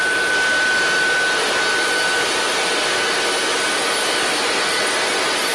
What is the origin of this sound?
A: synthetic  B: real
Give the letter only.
B